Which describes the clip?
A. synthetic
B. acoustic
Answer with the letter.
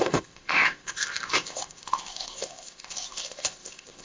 A